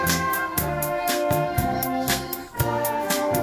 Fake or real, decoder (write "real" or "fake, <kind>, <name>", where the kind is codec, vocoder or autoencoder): fake, codec, SNAC